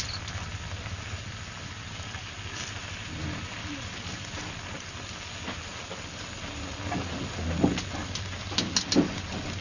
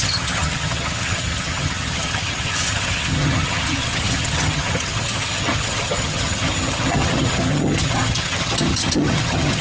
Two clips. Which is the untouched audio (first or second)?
first